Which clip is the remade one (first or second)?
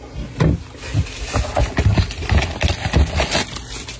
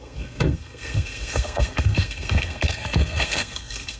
second